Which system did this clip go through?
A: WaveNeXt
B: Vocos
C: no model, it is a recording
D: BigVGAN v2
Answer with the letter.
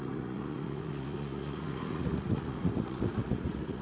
B